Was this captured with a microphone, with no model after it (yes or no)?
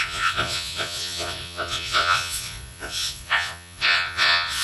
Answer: no